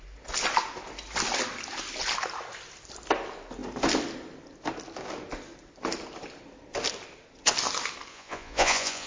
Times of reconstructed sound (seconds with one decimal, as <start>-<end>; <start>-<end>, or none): 8.1-9.1

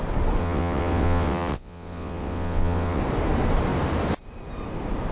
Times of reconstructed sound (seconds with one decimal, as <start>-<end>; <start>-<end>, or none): 0.4-3.0

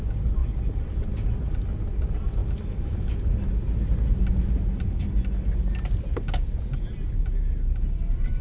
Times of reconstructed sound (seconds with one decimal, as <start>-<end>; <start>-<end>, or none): none

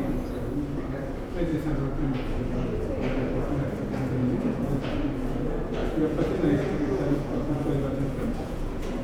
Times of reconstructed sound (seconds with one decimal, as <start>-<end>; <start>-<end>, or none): 4.2-4.8; 5.8-9.0